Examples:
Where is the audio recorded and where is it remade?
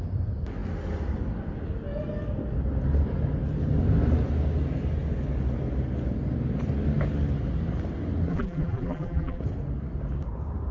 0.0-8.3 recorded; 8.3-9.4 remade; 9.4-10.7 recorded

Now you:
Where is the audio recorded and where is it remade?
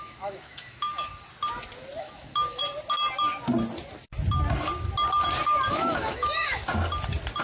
0.0-1.1 remade; 1.1-2.0 recorded; 2.0-2.6 remade; 2.6-5.7 recorded; 5.7-6.6 remade; 6.6-7.4 recorded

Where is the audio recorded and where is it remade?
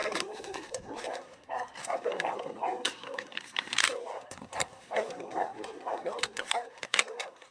0.0-7.5 remade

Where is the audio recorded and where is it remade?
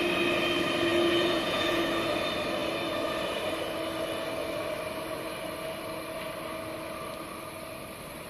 0.0-0.9 recorded; 0.9-1.8 remade; 1.8-8.3 recorded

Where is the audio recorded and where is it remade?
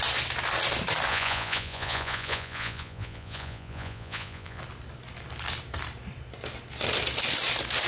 0.0-1.1 recorded; 1.1-4.6 remade; 4.6-7.9 recorded